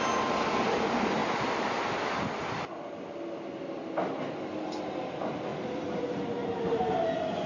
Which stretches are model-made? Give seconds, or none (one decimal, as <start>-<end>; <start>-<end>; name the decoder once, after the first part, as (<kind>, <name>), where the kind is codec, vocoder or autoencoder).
5.5-6.0 (vocoder, BigVGAN v2); 6.4-6.9